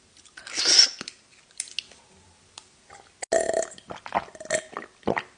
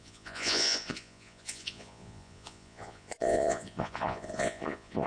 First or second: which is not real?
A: second